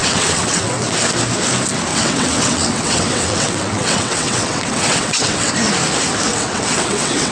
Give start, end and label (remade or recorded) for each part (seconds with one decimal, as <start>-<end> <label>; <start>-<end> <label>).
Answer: 0.0-0.9 remade; 0.9-1.9 recorded; 1.9-5.5 remade; 5.5-6.3 recorded; 6.3-7.3 remade